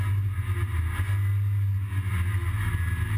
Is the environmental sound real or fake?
real